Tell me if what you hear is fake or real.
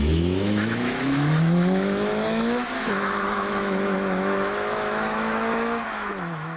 fake